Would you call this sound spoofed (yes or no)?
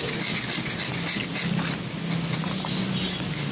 no